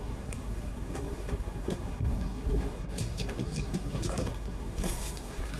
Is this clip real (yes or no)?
no